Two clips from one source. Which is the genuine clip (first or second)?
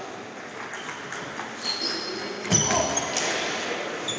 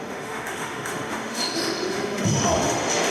first